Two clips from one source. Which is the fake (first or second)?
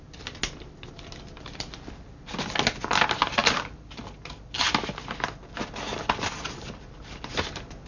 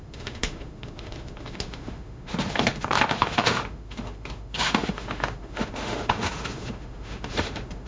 second